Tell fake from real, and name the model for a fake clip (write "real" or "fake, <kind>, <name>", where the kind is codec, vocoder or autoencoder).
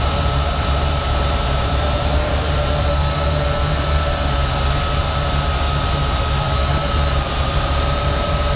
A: fake, vocoder, BigVGAN v2